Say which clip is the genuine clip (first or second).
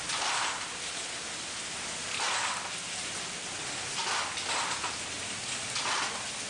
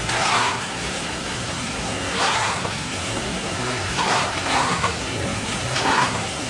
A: first